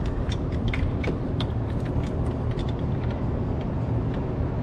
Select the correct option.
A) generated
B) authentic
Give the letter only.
B